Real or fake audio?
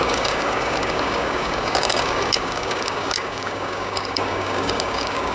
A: fake